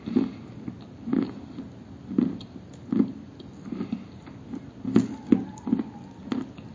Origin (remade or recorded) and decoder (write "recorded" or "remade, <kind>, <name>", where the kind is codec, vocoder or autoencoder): recorded